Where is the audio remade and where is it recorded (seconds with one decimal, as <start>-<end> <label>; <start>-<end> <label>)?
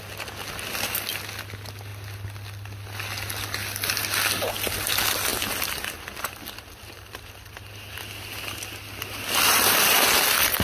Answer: 0.0-10.6 recorded